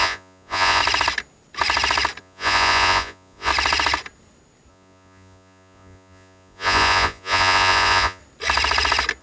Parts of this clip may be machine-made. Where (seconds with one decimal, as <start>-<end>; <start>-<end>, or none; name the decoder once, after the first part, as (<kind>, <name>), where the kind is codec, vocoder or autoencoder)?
0.0-0.8 (vocoder, Vocos); 2.2-3.5; 4.7-8.2